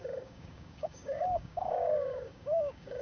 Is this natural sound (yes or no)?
no